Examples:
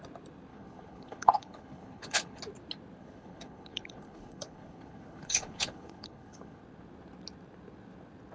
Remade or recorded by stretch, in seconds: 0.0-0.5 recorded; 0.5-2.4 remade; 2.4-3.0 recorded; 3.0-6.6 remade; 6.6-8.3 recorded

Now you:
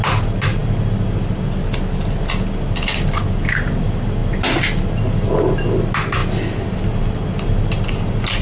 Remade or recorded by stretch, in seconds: 0.0-8.4 recorded

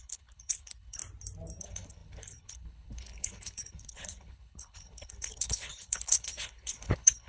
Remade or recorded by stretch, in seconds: 0.0-1.0 remade; 1.0-1.6 recorded; 1.6-7.3 remade

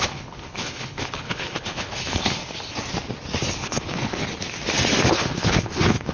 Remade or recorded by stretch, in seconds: 0.0-2.4 remade; 2.4-3.5 recorded; 3.5-4.2 remade; 4.2-5.1 recorded; 5.1-6.1 remade

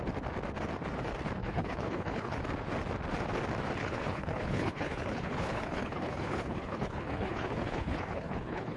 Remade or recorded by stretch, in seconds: 0.0-1.4 recorded; 1.4-2.4 remade; 2.4-3.8 recorded; 3.8-8.8 remade

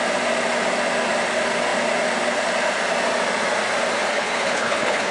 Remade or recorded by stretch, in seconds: 0.0-4.1 recorded; 4.1-5.1 remade

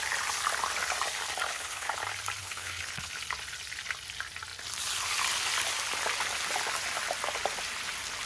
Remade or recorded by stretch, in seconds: 0.0-1.5 recorded; 1.5-2.0 remade; 2.0-2.4 recorded; 2.4-3.1 remade; 3.1-8.3 recorded

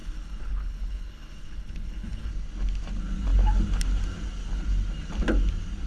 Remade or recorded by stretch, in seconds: 0.0-2.3 remade; 2.3-5.9 recorded